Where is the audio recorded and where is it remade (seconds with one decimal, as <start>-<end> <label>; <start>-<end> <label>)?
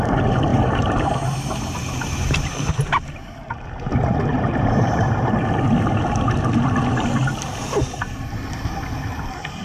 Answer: 0.0-0.5 recorded; 0.5-2.7 remade; 2.7-4.3 recorded; 4.3-5.1 remade; 5.1-9.6 recorded